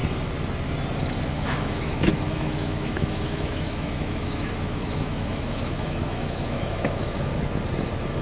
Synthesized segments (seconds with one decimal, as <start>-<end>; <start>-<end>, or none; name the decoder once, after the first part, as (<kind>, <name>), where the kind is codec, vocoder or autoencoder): 1.3-7.3 (autoencoder, DAC-VAE)